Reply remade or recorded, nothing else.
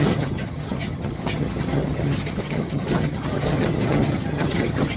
remade